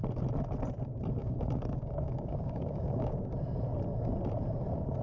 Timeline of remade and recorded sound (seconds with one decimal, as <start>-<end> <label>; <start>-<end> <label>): 0.0-1.2 recorded; 1.2-3.3 remade; 3.3-5.0 recorded